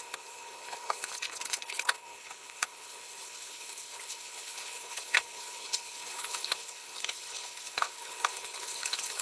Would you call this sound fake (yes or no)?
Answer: yes